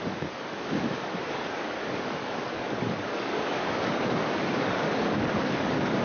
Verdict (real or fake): fake